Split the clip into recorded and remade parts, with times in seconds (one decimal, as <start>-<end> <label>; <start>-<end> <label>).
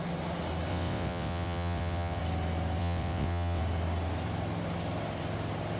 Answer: 0.0-0.7 recorded; 0.7-2.2 remade; 2.2-2.8 recorded; 2.8-3.6 remade; 3.6-5.8 recorded